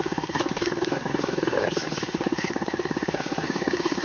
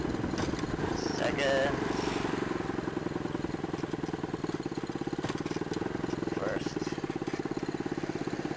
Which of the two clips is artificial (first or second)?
first